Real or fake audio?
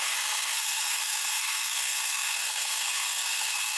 fake